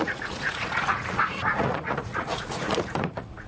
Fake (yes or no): yes